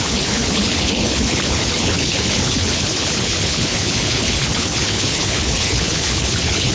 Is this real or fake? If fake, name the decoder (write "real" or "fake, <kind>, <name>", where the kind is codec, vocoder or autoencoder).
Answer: fake, codec, HILCodec